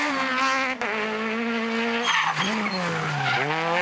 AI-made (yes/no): no